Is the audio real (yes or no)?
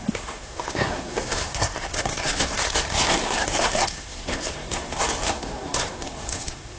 no